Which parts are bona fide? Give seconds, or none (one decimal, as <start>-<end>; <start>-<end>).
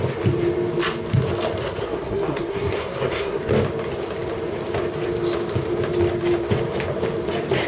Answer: 0.0-1.6; 3.4-7.7